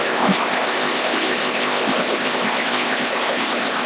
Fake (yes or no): yes